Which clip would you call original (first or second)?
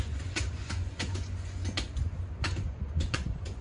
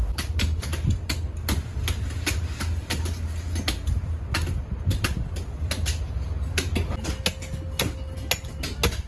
second